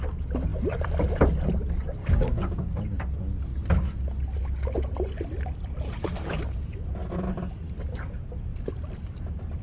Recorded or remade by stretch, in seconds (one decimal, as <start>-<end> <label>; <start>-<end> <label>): 0.0-2.0 recorded; 2.0-2.8 remade; 2.8-9.6 recorded